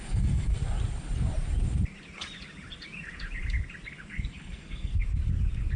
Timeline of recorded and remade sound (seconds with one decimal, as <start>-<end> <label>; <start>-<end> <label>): 0.0-0.6 remade; 0.6-4.1 recorded; 4.1-5.0 remade; 5.0-5.8 recorded